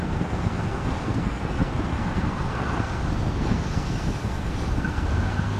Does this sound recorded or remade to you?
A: remade